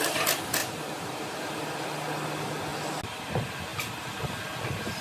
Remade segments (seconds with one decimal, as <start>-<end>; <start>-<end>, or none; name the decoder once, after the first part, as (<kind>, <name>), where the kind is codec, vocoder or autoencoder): 0.6-1.4 (vocoder, BigVGAN v2); 3.7-4.4